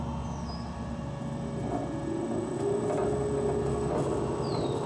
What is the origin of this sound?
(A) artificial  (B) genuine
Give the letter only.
B